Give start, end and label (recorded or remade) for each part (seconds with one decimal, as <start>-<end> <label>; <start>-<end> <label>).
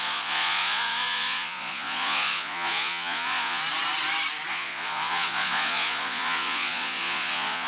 0.0-3.6 remade; 3.6-4.5 recorded; 4.5-7.7 remade